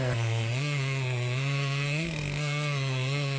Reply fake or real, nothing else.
fake